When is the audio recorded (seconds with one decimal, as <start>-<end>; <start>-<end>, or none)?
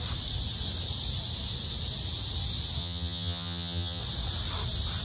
0.0-2.8; 4.0-5.0